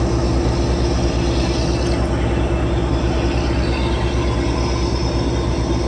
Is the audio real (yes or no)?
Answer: yes